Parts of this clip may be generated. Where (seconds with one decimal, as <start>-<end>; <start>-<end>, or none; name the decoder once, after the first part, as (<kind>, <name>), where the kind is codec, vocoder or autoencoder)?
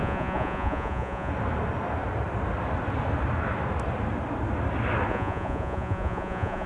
0.0-1.3 (vocoder, Vocos); 5.1-6.7